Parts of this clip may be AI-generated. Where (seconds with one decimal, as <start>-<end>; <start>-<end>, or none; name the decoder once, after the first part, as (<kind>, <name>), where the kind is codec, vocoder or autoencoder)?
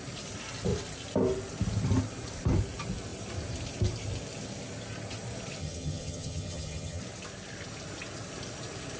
5.6-7.0 (vocoder, HiFi-GAN)